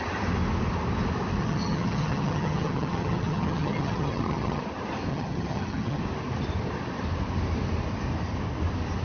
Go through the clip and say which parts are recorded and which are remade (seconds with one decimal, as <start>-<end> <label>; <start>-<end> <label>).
0.0-1.4 recorded; 1.4-4.6 remade; 4.6-5.1 recorded; 5.1-6.0 remade; 6.0-9.0 recorded